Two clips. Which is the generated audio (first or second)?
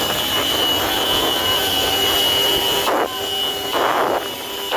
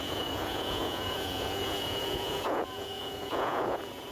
second